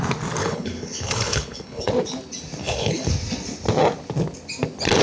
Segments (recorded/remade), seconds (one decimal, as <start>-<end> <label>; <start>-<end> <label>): 0.0-0.4 recorded; 0.4-1.9 remade; 1.9-2.6 recorded; 2.6-3.1 remade; 3.1-5.0 recorded